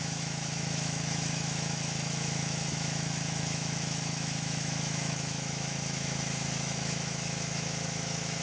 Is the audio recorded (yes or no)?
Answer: no